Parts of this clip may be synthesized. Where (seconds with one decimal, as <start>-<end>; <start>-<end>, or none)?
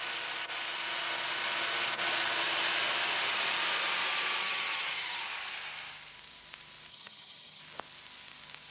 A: 4.4-5.2; 6.9-7.6